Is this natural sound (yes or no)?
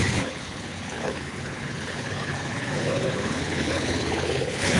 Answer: no